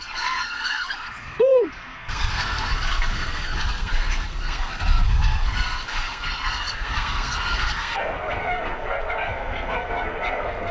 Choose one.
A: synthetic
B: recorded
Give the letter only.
A